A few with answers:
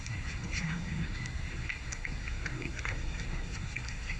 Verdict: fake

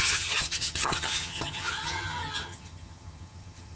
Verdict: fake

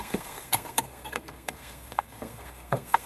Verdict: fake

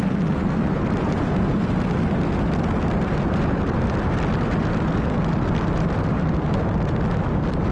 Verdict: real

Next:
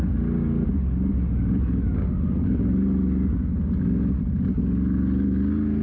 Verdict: real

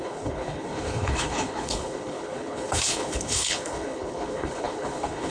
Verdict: fake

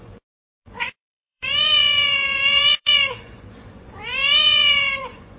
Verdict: fake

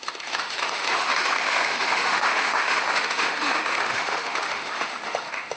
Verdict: fake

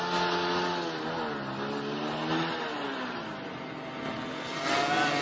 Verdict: real